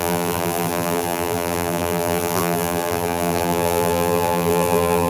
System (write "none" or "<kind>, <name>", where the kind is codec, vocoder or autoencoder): vocoder, BigVGAN v2